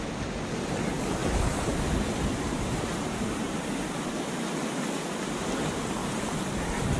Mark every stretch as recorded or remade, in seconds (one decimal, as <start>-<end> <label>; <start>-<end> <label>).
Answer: 0.0-1.2 recorded; 1.2-5.4 remade; 5.4-6.0 recorded; 6.0-7.0 remade